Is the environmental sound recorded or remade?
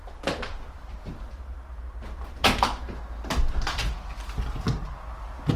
recorded